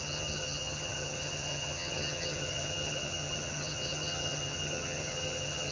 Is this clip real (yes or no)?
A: no